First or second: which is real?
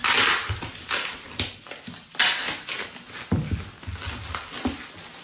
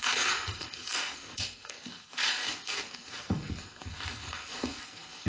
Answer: first